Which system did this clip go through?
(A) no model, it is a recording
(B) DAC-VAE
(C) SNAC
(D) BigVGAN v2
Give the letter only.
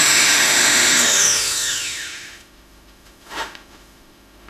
B